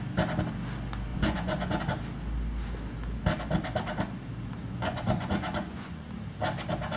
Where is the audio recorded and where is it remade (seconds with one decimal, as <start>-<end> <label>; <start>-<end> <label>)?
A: 0.0-1.1 recorded; 1.1-1.8 remade; 1.8-4.6 recorded; 4.6-6.1 remade; 6.1-7.0 recorded